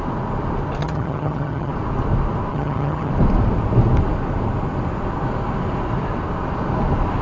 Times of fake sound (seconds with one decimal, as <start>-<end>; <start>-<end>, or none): 0.8-1.7; 2.5-3.1